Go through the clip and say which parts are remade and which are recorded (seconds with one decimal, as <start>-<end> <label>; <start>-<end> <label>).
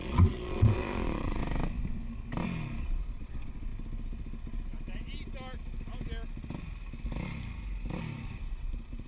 0.0-1.4 remade; 1.4-2.8 recorded; 2.8-3.7 remade; 3.7-8.4 recorded; 8.4-9.1 remade